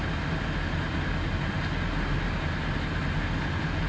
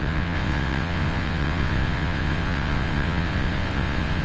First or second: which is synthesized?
second